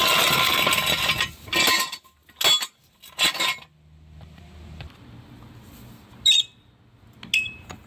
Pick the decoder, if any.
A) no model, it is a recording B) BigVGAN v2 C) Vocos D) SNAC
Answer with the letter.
A